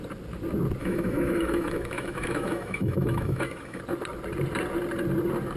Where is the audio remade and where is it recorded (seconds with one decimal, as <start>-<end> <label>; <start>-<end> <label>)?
0.0-0.8 recorded; 0.8-3.8 remade; 3.8-5.6 recorded